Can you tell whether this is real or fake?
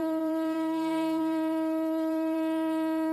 fake